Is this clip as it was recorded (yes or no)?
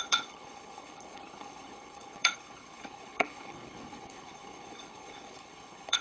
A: no